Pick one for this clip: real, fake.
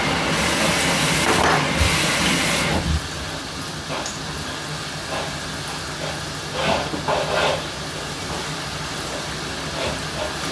real